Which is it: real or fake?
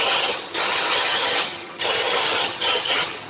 fake